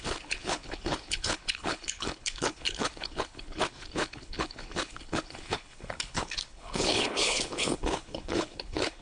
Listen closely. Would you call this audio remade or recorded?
remade